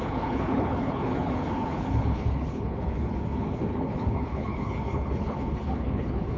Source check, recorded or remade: remade